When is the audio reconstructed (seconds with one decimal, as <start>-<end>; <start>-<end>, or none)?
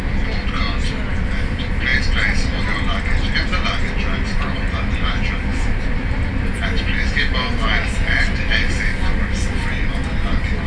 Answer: none